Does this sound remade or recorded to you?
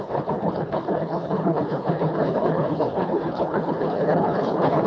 remade